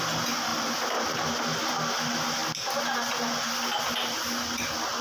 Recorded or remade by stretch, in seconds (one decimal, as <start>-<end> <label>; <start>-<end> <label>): 0.0-5.0 recorded